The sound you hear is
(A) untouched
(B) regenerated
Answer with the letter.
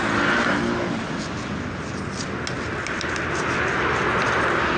A